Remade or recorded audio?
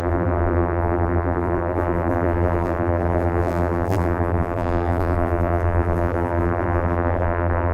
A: remade